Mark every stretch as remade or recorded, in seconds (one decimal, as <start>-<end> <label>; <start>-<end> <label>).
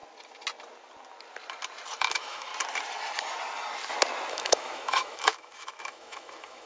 0.0-2.0 recorded; 2.0-2.5 remade; 2.5-4.3 recorded; 4.3-6.7 remade